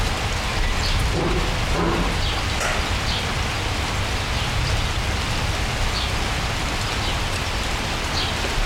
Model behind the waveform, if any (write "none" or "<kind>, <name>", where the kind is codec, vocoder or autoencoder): none